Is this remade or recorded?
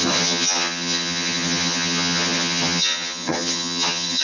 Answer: remade